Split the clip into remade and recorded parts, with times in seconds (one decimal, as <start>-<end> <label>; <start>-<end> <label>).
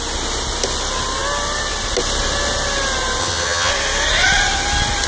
0.0-3.2 recorded; 3.2-3.7 remade; 3.7-5.1 recorded